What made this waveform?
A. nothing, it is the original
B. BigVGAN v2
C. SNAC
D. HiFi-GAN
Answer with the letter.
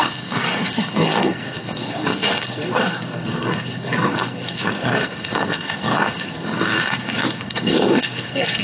C